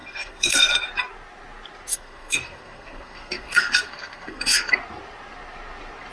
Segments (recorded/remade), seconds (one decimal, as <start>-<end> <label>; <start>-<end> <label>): 0.0-0.7 remade; 0.7-1.9 recorded; 1.9-4.7 remade; 4.7-6.1 recorded